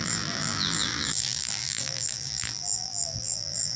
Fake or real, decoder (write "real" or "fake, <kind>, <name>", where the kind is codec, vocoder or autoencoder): fake, vocoder, BigVGAN v2